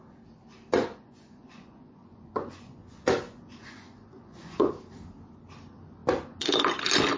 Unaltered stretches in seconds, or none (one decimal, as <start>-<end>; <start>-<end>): 0.0-0.8; 4.7-7.2